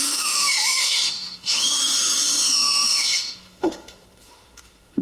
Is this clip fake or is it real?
fake